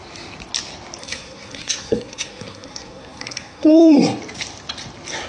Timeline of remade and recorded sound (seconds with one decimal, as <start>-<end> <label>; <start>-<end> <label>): 0.0-1.0 recorded; 1.0-4.2 remade; 4.2-5.3 recorded